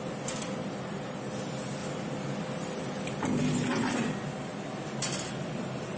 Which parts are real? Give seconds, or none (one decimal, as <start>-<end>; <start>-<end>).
0.0-6.0